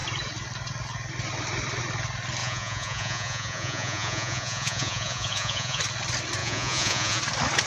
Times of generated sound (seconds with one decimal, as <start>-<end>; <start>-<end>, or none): 2.4-5.8; 6.4-7.2